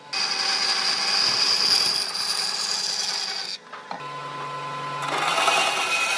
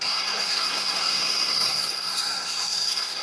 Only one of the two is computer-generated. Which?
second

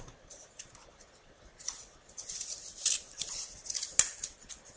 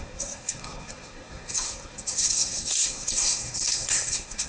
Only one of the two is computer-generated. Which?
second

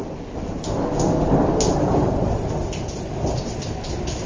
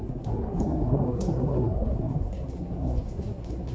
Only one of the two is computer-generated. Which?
second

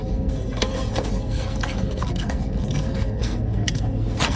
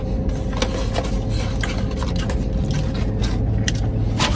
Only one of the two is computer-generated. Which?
first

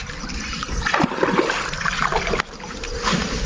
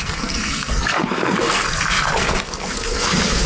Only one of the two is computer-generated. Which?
second